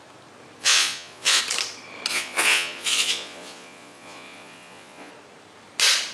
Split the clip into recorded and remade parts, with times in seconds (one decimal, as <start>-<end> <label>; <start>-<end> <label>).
0.0-0.6 recorded; 0.6-1.4 remade; 1.4-2.1 recorded; 2.1-5.1 remade; 5.1-6.1 recorded